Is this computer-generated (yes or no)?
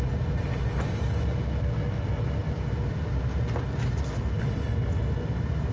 no